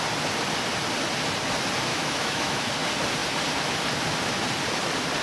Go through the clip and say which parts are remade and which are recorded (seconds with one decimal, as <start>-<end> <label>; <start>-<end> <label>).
0.0-1.9 recorded; 1.9-2.7 remade; 2.7-5.2 recorded